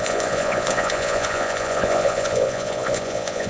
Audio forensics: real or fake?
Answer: fake